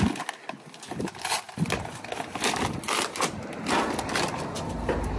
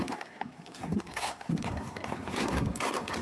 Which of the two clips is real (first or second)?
first